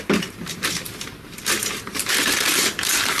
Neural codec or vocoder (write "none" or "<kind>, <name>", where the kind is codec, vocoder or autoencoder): vocoder, BigVGAN v2